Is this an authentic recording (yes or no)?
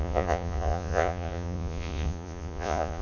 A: no